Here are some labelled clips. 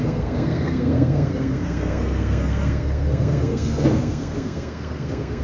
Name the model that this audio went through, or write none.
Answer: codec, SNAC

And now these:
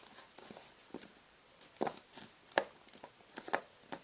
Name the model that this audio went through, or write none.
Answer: none